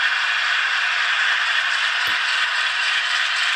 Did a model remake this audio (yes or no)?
no